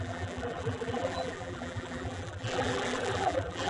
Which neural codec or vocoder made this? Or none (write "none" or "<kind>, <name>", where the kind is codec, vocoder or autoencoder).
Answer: vocoder, BigVGAN v2